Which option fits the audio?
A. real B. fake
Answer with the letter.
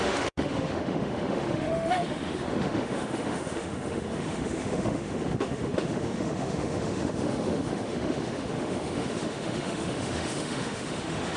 B